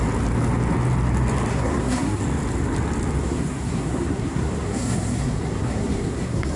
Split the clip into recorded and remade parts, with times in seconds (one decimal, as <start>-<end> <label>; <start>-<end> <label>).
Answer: 0.0-1.5 recorded; 1.5-2.2 remade; 2.2-3.2 recorded; 3.2-6.6 remade